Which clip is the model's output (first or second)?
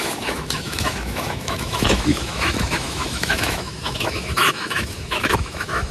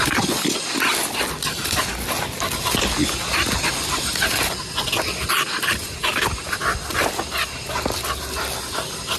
first